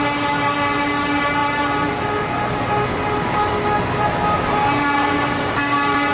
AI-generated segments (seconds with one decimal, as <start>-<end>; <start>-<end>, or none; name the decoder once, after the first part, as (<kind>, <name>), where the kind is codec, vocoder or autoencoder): none